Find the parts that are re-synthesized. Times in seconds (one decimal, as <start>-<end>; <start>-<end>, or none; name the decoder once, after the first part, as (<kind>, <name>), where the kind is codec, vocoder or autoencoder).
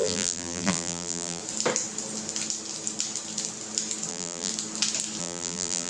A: 0.0-1.4 (vocoder, BigVGAN v2); 4.1-4.5; 5.2-5.9